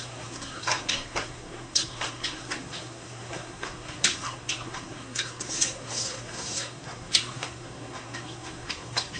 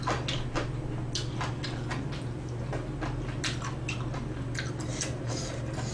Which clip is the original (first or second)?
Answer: second